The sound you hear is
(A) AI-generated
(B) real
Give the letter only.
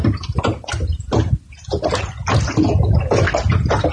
B